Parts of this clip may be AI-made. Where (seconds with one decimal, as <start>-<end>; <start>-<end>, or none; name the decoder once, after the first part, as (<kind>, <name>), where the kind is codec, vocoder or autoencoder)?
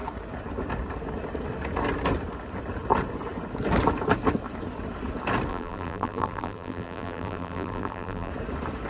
5.5-8.3 (vocoder, BigVGAN v2)